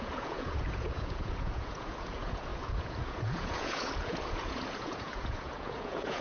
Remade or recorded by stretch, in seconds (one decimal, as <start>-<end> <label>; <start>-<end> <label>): 0.0-6.2 remade